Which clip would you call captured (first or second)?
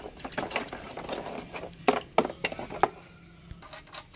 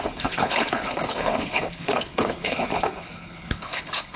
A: first